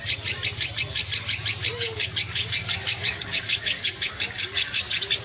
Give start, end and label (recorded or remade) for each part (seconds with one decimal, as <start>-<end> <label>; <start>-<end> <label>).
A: 0.0-1.7 recorded; 1.7-4.8 remade; 4.8-5.2 recorded